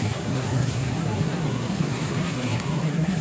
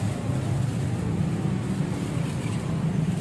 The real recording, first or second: second